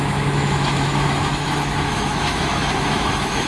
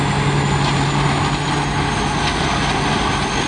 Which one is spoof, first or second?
first